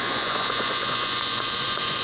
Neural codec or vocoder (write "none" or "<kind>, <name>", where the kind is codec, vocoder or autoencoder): vocoder, Vocos